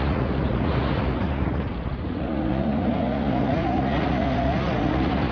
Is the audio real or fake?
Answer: fake